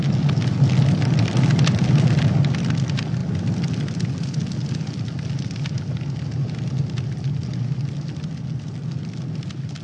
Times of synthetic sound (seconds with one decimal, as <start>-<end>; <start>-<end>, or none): none